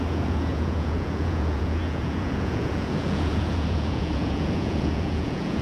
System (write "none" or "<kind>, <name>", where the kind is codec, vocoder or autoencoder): vocoder, Vocos